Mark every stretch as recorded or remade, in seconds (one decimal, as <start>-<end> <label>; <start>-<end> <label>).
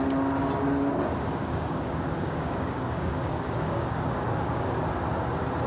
0.0-1.4 recorded; 1.4-4.8 remade; 4.8-5.7 recorded